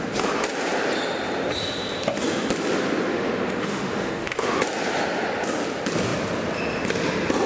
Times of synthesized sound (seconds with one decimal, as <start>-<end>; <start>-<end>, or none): 3.1-4.6